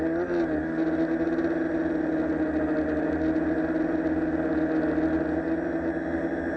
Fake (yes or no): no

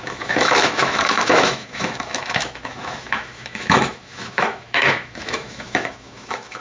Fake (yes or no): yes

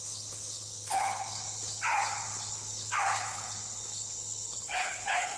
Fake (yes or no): yes